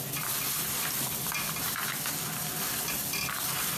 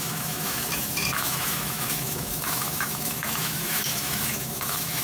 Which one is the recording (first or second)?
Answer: first